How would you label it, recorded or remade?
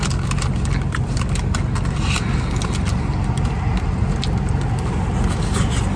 recorded